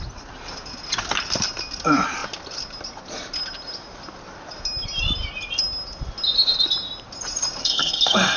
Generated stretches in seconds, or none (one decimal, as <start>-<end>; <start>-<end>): 7.6-8.4